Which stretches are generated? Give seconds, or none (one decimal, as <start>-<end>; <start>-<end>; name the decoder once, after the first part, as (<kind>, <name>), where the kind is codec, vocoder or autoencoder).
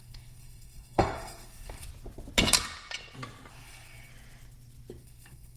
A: 0.0-1.9 (codec, SNAC); 3.5-4.1; 5.0-5.6